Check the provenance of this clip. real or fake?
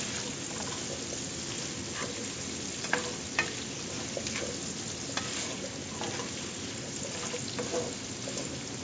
real